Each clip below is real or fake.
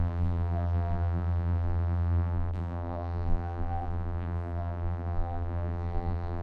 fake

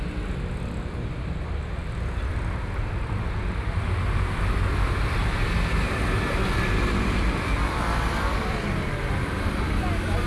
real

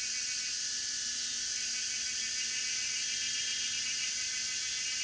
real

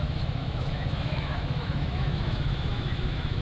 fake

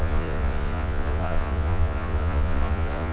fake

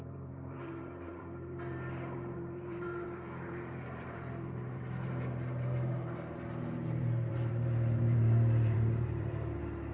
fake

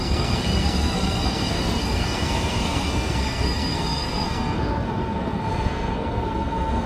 fake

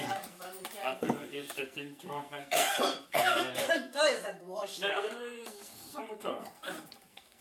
fake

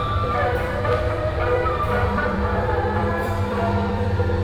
fake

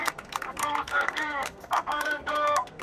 fake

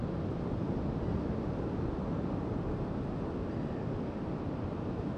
real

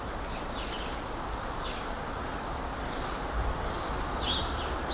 real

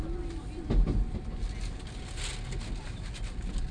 real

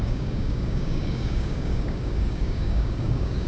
fake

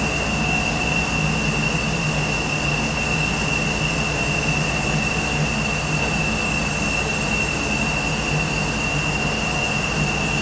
real